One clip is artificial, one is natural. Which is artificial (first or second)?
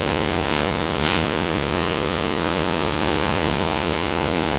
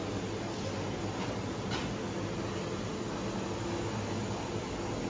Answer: first